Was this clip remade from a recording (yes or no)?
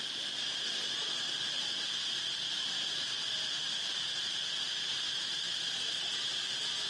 no